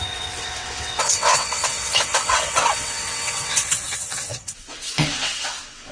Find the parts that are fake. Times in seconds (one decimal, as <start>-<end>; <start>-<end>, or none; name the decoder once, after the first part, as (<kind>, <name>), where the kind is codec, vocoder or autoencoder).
0.0-5.9 (vocoder, WaveNeXt)